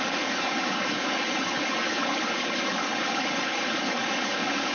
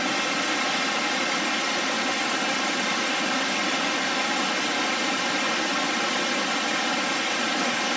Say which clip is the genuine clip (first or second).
second